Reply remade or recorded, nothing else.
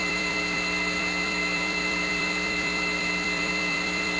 remade